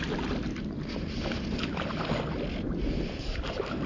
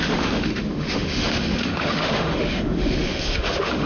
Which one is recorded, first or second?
first